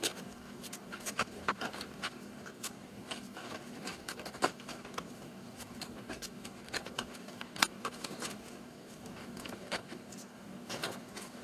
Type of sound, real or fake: fake